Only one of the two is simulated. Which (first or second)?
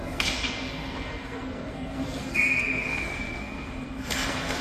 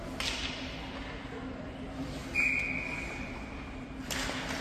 first